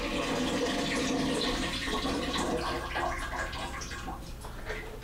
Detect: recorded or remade recorded